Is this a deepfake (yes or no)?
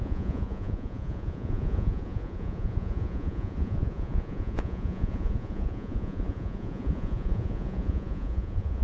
yes